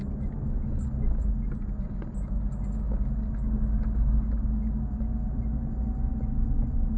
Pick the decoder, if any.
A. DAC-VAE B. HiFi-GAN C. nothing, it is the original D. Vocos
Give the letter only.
C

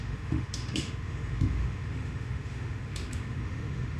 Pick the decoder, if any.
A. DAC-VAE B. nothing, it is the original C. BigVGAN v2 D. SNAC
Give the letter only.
A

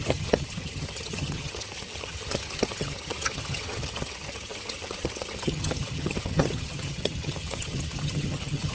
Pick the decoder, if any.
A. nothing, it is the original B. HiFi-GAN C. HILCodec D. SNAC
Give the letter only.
B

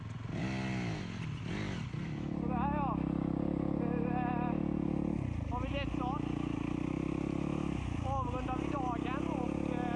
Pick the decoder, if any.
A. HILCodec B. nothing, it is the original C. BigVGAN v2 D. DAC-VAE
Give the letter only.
B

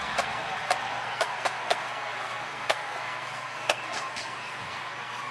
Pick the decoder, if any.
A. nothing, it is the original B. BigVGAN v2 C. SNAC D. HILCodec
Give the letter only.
C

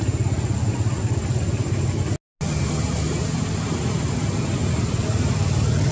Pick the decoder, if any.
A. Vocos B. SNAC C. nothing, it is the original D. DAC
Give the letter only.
C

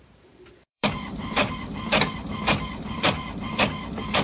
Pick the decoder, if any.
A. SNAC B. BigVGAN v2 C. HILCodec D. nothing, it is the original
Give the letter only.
B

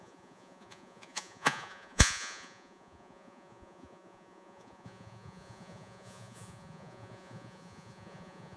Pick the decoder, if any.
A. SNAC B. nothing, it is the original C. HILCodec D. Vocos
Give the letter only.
D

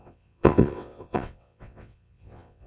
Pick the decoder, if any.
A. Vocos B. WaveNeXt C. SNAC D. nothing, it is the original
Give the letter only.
B